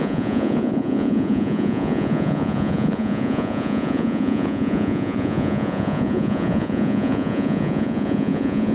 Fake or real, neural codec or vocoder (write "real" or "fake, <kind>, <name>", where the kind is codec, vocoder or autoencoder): fake, vocoder, Vocos